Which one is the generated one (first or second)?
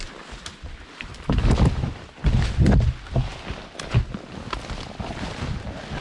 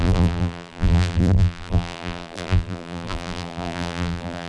second